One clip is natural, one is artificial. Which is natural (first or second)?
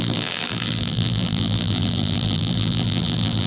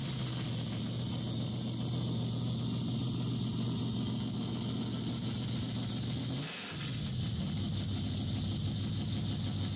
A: second